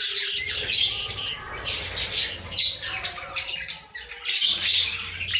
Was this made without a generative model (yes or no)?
yes